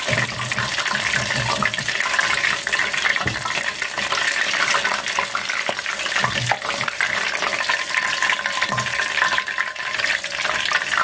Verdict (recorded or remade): recorded